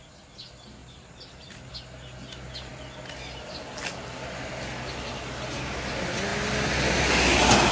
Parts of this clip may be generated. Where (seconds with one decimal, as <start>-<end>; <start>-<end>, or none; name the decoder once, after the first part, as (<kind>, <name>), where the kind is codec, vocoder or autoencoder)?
0.8-1.7 (vocoder, BigVGAN v2)

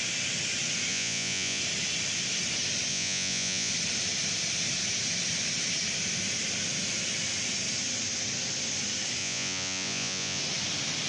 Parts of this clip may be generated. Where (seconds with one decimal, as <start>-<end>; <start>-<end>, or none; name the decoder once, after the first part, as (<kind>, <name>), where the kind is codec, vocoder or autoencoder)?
0.9-1.6 (vocoder, Vocos); 2.9-3.7; 9.2-10.4

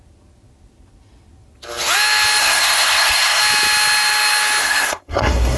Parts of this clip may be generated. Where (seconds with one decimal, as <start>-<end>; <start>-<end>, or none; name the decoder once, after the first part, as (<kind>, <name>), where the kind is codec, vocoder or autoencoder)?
2.4-3.4 (codec, SNAC); 4.6-5.6

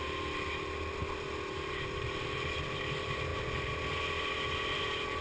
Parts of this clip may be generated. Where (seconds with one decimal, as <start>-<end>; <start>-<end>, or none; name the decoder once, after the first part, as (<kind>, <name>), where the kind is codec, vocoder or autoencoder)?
none